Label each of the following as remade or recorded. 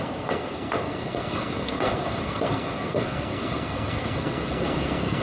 remade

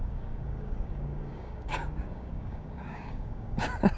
remade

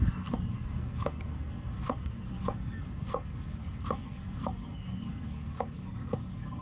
remade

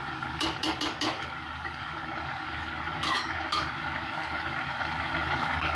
remade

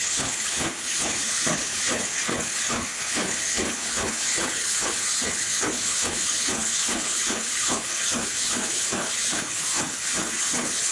remade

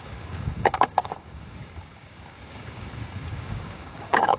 remade